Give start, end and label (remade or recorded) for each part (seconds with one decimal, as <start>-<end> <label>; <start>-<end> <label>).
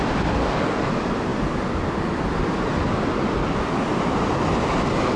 0.0-0.4 recorded; 0.4-0.9 remade; 0.9-5.2 recorded